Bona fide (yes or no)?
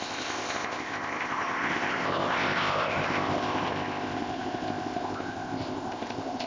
no